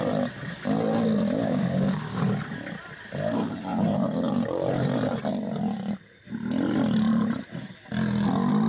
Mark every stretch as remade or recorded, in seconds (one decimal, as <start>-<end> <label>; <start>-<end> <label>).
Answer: 0.0-1.4 recorded; 1.4-2.3 remade; 2.3-8.7 recorded